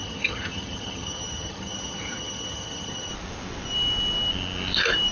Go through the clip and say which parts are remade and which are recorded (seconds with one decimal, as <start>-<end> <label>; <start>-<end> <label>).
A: 0.0-3.1 remade; 3.1-5.1 recorded